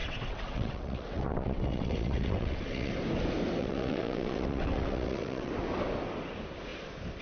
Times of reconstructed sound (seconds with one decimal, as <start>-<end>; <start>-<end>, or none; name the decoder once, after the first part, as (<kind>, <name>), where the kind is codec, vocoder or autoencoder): 0.0-2.9 (vocoder, WaveNeXt); 3.6-5.5